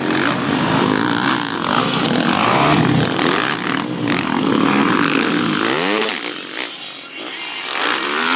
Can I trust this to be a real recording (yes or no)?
yes